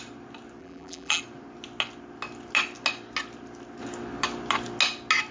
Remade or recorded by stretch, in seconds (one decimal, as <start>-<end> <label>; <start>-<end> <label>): 0.0-0.6 recorded; 0.6-1.2 remade; 1.2-5.3 recorded